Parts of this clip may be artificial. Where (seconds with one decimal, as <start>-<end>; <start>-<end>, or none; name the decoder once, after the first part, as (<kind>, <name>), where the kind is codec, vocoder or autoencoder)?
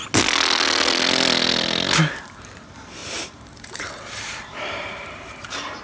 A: 3.0-5.8 (vocoder, BigVGAN v2)